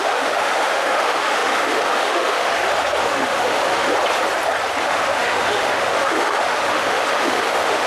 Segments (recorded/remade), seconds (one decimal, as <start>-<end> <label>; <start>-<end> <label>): 0.0-2.5 remade; 2.5-3.0 recorded; 3.0-3.9 remade; 3.9-4.8 recorded; 4.8-7.9 remade